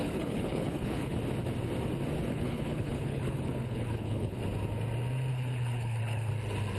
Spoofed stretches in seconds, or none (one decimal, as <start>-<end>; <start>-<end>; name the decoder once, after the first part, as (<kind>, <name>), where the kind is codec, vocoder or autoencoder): 0.0-1.2 (codec, HILCodec); 2.3-4.4; 5.3-6.3